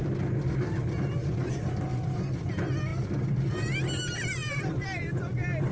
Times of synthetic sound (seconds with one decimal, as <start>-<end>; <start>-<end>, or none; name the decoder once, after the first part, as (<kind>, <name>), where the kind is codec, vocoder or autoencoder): none